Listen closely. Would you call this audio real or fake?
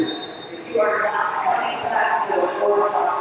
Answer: real